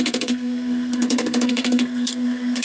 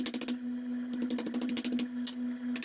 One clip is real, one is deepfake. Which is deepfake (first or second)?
first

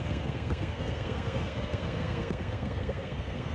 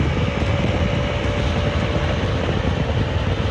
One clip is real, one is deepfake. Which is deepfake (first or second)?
first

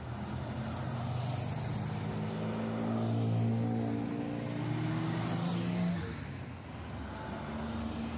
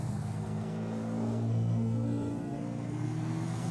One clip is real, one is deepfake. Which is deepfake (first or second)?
second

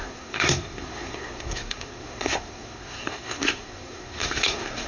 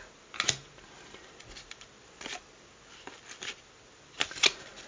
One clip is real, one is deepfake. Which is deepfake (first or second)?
first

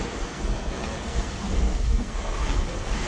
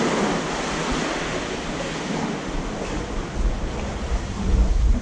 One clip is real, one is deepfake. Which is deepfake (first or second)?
first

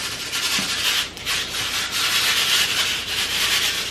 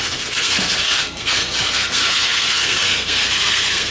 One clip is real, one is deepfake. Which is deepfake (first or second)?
second